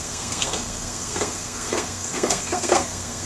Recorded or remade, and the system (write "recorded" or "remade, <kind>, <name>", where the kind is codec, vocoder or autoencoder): remade, codec, SNAC